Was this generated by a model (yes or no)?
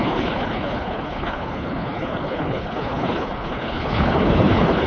yes